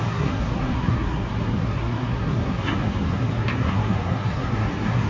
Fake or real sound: fake